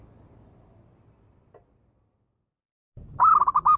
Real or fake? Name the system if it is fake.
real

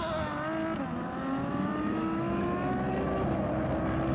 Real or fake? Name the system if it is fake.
real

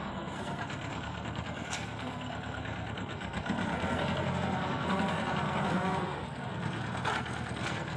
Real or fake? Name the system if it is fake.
fake, codec, SNAC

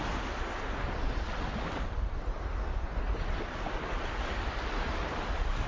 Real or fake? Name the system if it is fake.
real